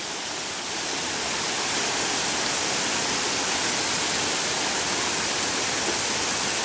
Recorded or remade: recorded